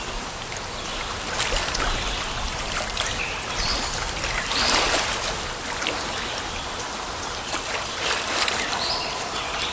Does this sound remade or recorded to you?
remade